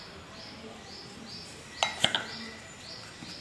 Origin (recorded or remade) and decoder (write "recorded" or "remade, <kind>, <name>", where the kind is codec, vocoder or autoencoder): recorded